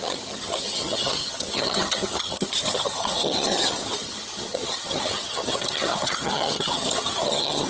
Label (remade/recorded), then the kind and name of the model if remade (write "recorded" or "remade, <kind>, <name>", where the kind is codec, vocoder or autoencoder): remade, vocoder, HiFi-GAN